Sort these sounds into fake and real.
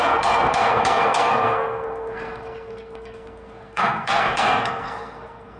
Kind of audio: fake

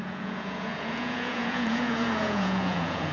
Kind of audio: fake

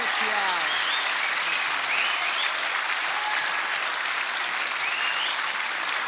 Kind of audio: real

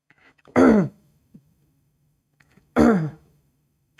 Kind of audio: fake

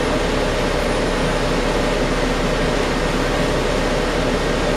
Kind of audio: real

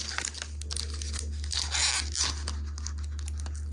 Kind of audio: real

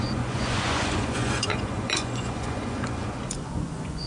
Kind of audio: fake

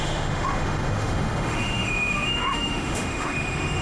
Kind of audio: fake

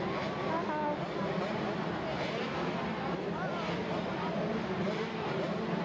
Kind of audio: real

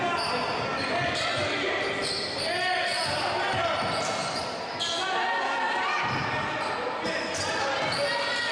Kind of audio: real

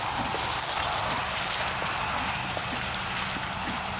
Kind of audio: real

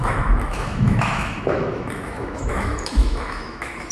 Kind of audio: fake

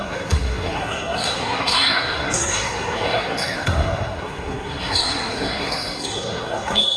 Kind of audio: fake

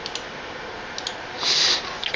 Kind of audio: real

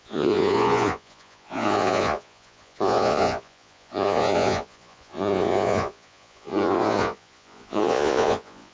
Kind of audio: fake